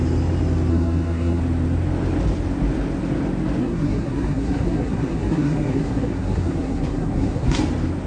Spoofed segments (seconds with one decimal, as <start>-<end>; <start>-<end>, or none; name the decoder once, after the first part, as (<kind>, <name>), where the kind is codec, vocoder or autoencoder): 0.7-1.4 (codec, SNAC); 3.6-7.6